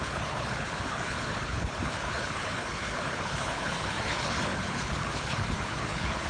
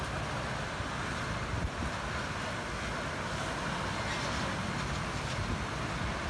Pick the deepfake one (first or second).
first